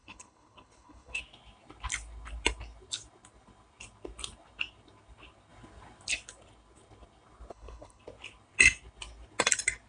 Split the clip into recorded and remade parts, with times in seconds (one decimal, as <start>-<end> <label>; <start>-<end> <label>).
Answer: 0.0-1.2 remade; 1.2-7.5 recorded; 7.5-8.0 remade; 8.0-9.9 recorded